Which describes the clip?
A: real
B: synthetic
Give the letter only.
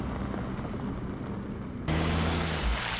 A